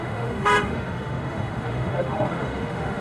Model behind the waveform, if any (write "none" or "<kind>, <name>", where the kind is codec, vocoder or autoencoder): autoencoder, DAC-VAE